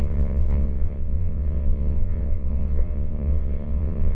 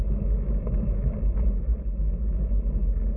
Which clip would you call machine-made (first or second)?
first